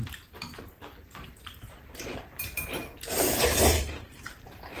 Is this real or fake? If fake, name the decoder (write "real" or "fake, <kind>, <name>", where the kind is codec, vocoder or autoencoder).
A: fake, vocoder, BigVGAN v2